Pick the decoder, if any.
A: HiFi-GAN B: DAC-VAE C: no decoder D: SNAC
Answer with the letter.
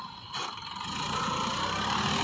C